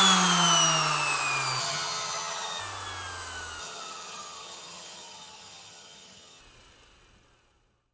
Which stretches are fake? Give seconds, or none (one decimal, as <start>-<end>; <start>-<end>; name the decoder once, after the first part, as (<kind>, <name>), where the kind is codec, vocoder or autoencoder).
1.6-2.6 (vocoder, HiFi-GAN); 3.6-6.4

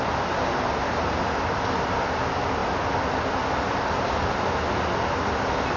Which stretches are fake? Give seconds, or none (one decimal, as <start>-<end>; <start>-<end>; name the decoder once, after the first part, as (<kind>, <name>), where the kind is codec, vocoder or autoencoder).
none